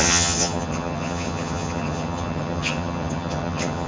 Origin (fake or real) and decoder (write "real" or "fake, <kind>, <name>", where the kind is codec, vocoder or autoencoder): fake, vocoder, HiFi-GAN